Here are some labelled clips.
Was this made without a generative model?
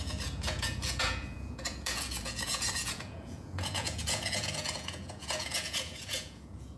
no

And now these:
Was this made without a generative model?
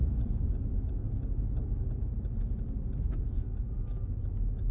yes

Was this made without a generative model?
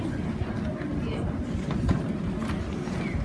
yes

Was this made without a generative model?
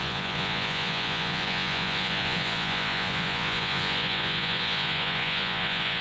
no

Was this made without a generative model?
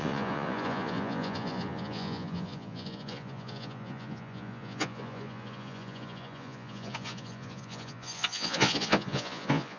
no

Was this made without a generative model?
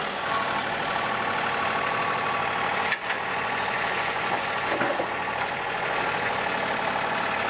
no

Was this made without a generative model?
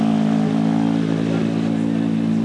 yes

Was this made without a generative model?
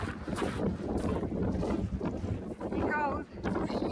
yes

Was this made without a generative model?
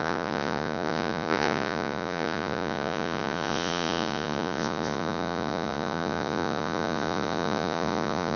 no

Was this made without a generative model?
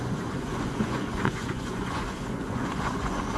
no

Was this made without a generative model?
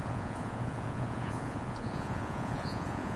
no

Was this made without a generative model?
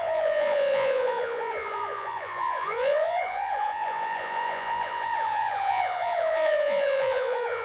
no